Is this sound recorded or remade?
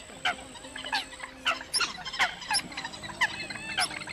recorded